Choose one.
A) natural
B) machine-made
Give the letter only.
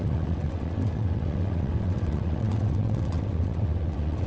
B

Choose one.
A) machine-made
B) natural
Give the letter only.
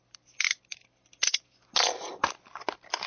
B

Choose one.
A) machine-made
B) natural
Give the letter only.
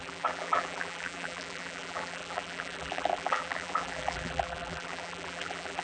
A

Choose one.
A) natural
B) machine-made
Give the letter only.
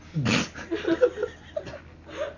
A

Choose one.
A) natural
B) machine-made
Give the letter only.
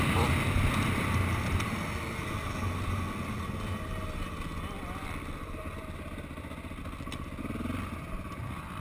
A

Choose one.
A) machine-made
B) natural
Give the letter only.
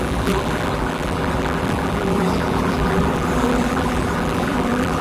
A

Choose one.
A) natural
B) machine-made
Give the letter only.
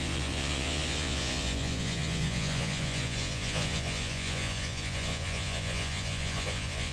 B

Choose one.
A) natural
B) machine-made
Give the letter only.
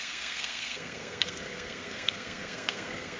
B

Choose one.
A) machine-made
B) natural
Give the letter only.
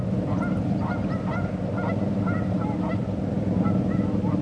B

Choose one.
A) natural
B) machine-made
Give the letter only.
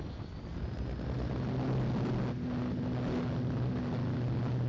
A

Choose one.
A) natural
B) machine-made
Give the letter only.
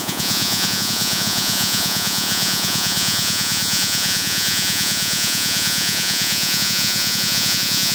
B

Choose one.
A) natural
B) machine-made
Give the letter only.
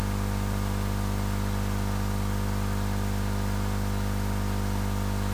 A